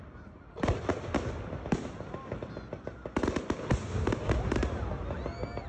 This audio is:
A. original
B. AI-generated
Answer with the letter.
A